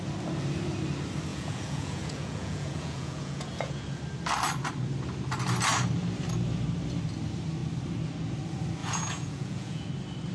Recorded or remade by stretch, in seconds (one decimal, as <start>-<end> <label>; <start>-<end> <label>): 0.0-1.3 recorded; 1.3-4.0 remade; 4.0-8.8 recorded; 8.8-9.9 remade; 9.9-10.3 recorded